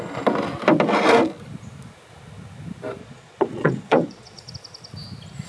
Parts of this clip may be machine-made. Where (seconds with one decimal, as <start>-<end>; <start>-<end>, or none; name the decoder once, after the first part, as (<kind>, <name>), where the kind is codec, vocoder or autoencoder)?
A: 3.0-4.5 (vocoder, Vocos)